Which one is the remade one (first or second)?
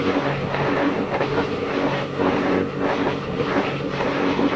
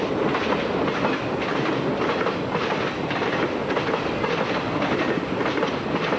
first